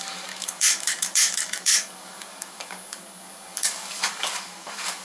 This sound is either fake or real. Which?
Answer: fake